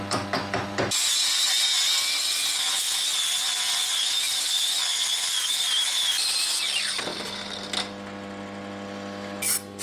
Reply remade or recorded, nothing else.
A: recorded